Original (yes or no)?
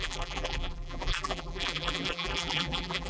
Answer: no